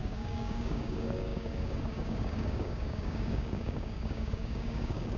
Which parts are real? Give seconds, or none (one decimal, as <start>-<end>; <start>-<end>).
none